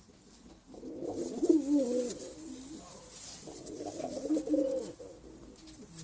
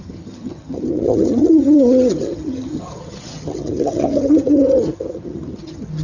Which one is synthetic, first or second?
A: second